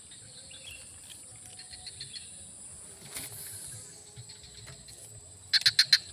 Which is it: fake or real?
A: real